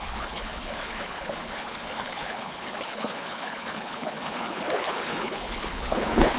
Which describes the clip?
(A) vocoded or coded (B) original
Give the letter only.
A